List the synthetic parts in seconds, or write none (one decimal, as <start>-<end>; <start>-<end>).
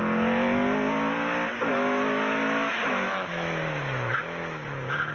1.7-5.1